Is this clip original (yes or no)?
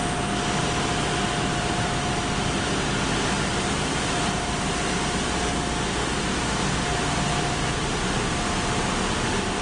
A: yes